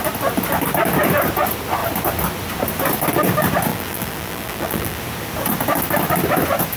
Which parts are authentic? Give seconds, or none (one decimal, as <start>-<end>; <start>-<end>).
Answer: 0.0-3.7; 5.0-6.8